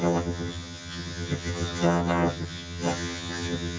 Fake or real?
fake